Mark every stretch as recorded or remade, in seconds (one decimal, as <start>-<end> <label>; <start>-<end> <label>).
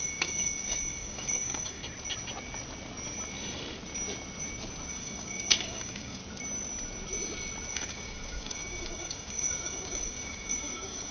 0.0-1.8 remade; 1.8-4.9 recorded; 4.9-6.2 remade; 6.2-7.7 recorded; 7.7-11.1 remade